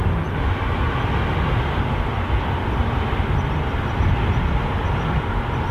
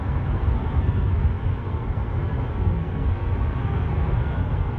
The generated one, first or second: second